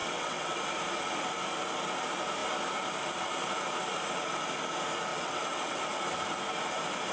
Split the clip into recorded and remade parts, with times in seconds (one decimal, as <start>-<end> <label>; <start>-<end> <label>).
0.0-0.6 remade; 0.6-5.1 recorded; 5.1-5.8 remade; 5.8-7.1 recorded